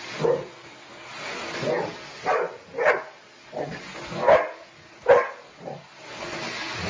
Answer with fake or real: real